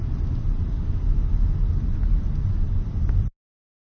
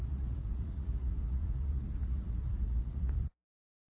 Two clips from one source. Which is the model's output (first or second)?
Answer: second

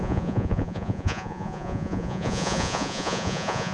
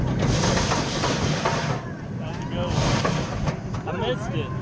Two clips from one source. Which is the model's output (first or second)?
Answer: first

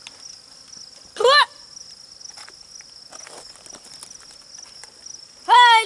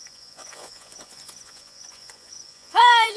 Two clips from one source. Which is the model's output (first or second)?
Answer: second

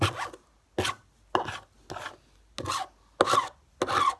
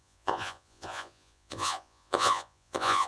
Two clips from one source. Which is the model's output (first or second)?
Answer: second